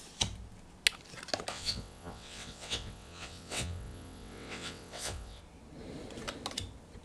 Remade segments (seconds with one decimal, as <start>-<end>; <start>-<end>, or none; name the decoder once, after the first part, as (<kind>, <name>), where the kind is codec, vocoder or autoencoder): 1.5-5.4 (vocoder, WaveNeXt)